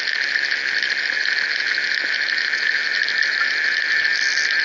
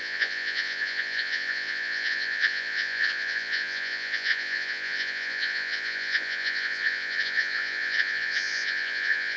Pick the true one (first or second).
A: first